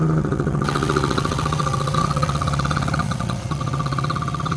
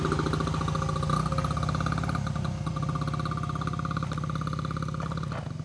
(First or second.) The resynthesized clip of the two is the first